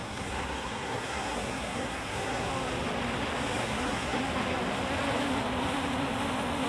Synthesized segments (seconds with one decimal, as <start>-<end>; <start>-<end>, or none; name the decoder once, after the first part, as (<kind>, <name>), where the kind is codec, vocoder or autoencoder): 0.0-2.5 (codec, SNAC); 3.6-4.2